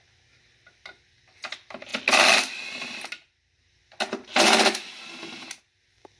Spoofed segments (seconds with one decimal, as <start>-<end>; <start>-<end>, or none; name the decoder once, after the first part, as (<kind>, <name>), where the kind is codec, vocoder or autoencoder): none